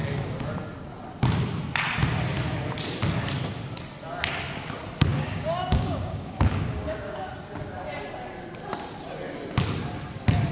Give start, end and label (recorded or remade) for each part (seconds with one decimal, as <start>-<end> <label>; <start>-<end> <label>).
0.0-5.1 recorded; 5.1-7.3 remade; 7.3-10.5 recorded